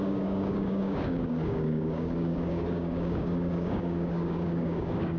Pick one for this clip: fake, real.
fake